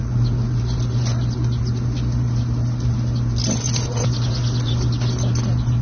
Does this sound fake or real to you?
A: real